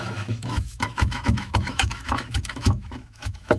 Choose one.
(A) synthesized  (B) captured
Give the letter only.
A